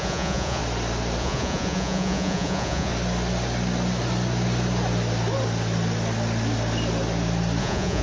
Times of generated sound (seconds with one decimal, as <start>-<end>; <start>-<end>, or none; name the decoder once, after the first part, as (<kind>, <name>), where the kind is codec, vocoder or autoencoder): 0.0-0.6 (vocoder, Vocos); 1.2-2.9; 7.6-8.0